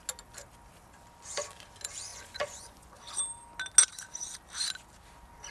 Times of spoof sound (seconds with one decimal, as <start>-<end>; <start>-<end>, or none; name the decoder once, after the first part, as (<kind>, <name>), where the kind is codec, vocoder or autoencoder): 2.1-2.9 (vocoder, Vocos)